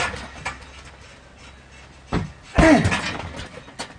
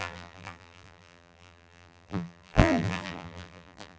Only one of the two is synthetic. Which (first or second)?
second